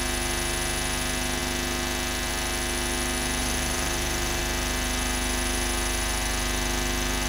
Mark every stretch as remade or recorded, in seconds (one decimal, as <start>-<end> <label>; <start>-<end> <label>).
0.0-3.4 recorded; 3.4-4.4 remade; 4.4-7.3 recorded